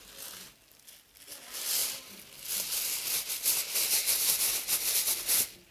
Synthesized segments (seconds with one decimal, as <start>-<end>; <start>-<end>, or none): none